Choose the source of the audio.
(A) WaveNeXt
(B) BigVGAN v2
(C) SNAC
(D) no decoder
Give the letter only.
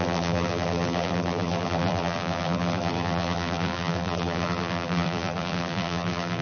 B